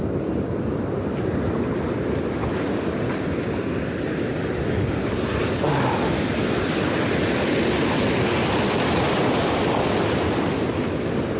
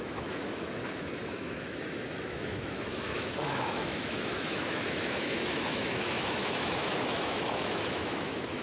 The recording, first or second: first